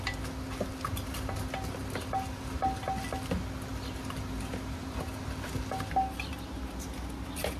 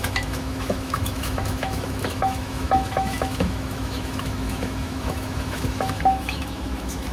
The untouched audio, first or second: first